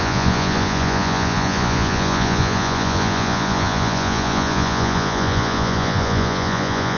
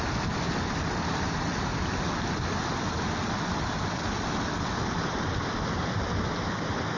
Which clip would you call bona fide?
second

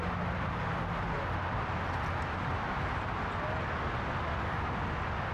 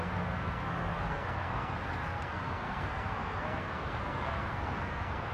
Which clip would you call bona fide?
first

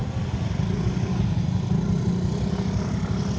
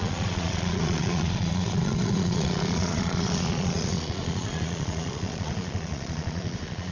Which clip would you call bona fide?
first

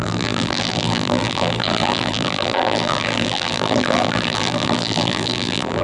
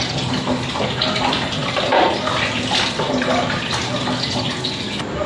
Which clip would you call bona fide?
second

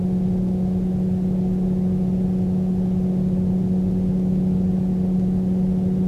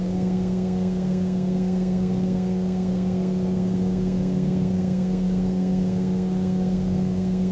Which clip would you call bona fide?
first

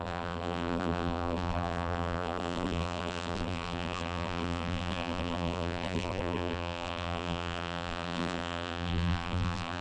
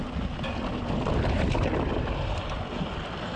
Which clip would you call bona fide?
second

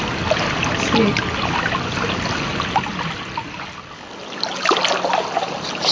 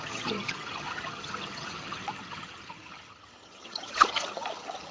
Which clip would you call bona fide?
first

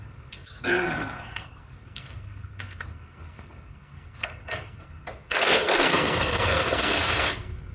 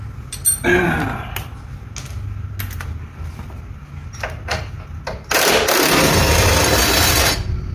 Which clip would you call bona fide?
second